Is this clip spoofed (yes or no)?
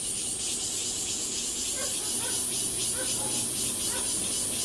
no